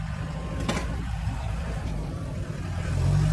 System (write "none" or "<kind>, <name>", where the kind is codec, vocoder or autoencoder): vocoder, BigVGAN v2